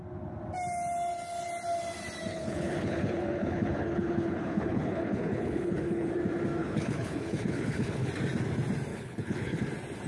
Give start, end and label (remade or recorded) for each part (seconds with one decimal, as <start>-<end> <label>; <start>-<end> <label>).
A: 0.0-2.3 recorded; 2.3-6.1 remade; 6.1-6.6 recorded; 6.6-8.1 remade; 8.1-8.9 recorded; 8.9-9.6 remade; 9.6-10.1 recorded